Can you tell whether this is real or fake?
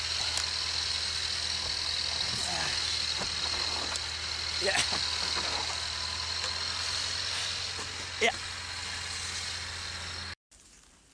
real